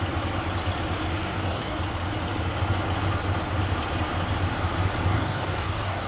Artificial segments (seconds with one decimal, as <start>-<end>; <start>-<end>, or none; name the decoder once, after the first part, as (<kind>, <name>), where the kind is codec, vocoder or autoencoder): 1.2-1.8 (codec, DAC); 5.1-6.1